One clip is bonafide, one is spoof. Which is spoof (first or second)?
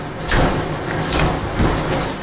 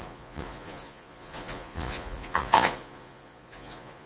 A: second